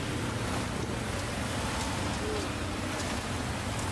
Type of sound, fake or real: real